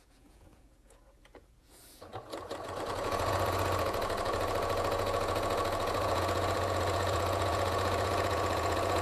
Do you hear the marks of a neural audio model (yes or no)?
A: yes